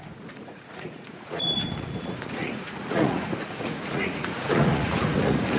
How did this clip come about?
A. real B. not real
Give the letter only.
B